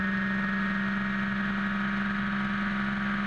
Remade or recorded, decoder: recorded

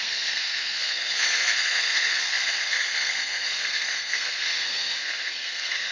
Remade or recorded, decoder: remade, codec, SNAC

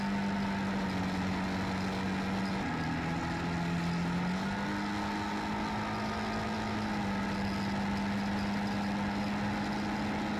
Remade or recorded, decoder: recorded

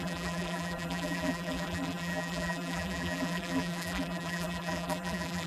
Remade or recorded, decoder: remade, vocoder, BigVGAN v2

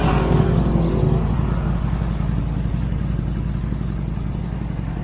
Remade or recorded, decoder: recorded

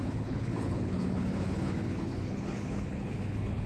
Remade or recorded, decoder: remade, codec, HILCodec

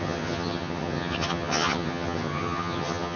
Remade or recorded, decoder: remade, vocoder, HiFi-GAN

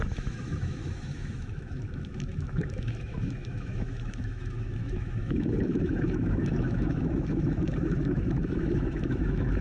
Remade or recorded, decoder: remade, autoencoder, DAC-VAE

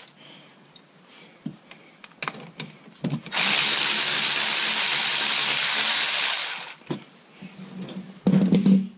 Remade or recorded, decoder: recorded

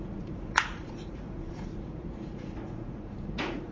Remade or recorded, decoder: remade, vocoder, Vocos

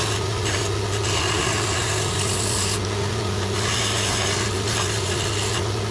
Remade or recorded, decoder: recorded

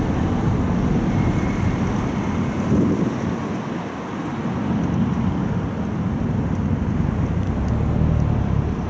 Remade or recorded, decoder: recorded